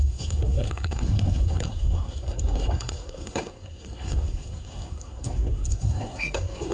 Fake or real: fake